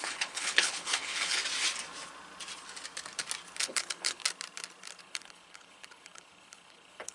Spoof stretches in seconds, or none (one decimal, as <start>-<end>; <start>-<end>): 0.0-1.4; 3.6-4.2; 5.0-7.1